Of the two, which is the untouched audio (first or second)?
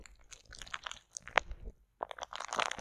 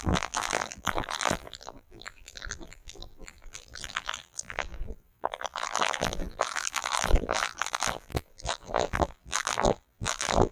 first